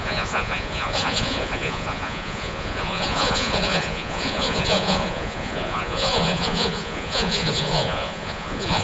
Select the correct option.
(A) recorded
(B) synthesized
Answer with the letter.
B